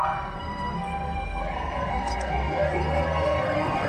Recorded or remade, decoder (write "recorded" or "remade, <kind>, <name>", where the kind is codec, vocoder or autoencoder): remade, codec, SNAC